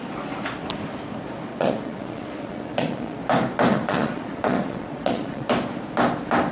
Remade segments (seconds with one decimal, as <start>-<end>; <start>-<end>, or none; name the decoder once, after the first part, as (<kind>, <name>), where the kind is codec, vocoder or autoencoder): 1.5-3.2 (vocoder, Vocos); 3.7-5.5